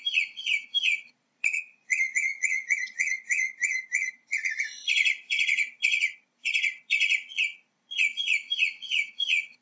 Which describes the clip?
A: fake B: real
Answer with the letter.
A